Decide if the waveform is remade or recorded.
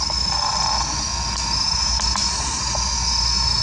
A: recorded